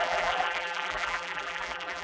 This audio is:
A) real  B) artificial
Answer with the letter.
B